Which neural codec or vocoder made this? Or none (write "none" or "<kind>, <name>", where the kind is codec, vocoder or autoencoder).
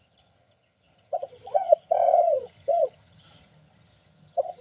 vocoder, HiFi-GAN